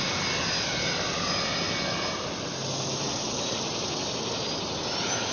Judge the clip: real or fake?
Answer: real